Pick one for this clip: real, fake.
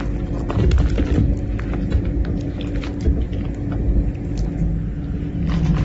real